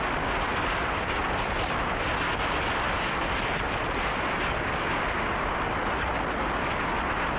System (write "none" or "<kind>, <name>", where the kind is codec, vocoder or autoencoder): none